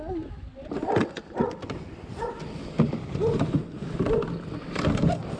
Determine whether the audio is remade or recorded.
recorded